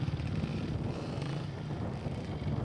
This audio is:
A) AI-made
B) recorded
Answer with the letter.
B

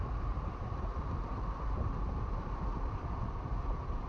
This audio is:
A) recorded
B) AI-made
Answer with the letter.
B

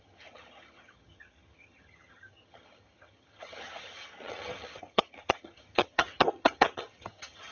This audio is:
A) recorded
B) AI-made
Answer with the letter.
B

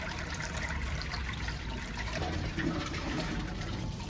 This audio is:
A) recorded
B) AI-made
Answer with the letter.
B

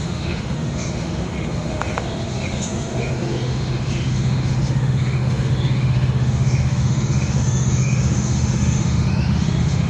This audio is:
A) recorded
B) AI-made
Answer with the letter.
B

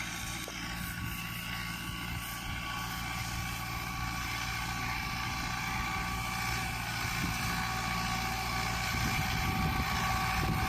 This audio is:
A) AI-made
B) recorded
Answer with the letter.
B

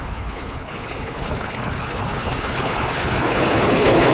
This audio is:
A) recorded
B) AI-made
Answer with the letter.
B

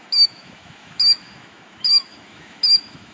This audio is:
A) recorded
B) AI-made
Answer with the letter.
B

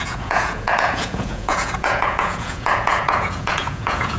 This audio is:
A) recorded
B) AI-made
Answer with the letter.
B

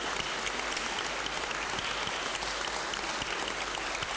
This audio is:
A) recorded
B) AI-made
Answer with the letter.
A